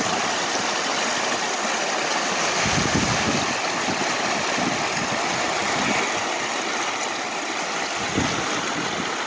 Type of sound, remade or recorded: recorded